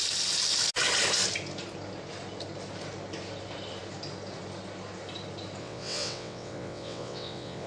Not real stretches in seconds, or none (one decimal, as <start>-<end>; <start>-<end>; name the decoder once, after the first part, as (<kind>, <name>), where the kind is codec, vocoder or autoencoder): 5.6-7.7 (vocoder, WaveNeXt)